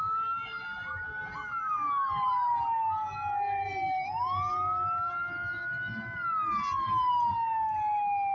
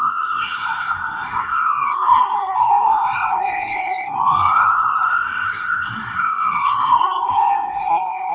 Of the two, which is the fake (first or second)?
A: second